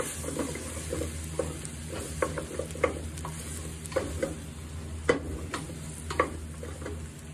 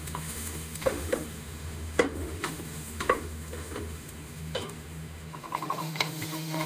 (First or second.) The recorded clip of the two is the first